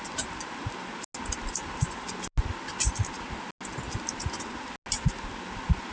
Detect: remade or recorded recorded